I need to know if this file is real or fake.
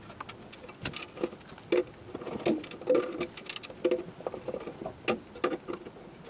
real